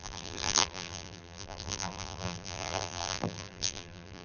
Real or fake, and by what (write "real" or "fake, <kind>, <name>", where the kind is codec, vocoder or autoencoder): fake, vocoder, BigVGAN v2